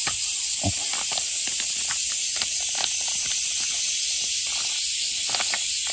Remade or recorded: recorded